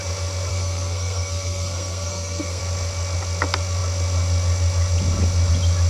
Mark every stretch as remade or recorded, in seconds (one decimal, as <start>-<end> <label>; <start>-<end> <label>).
0.0-0.5 recorded; 0.5-2.6 remade; 2.6-5.9 recorded